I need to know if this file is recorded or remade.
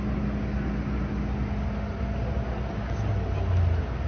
recorded